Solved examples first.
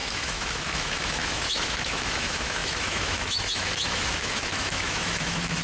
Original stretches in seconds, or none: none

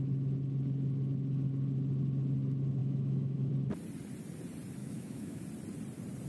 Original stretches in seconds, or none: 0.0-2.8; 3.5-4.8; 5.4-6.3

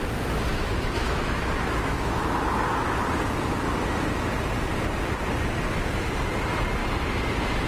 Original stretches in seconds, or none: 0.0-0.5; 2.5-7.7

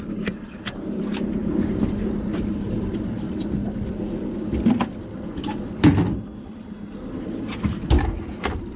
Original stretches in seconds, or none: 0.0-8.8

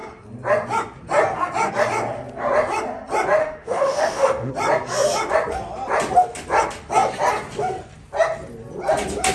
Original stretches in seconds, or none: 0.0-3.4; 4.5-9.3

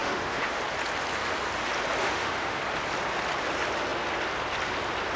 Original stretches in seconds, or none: 0.6-2.0; 2.6-5.2

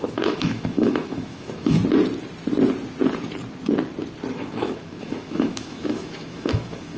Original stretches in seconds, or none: 1.8-4.3

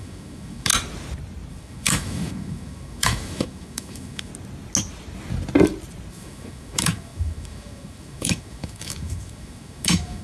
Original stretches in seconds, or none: 0.7-1.5; 4.3-6.1